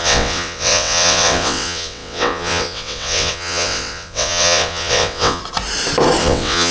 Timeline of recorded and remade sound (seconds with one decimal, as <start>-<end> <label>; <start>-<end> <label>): 0.0-5.4 remade; 5.4-6.2 recorded; 6.2-6.7 remade